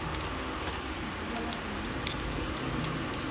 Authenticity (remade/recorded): recorded